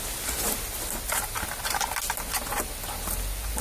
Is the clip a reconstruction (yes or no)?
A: no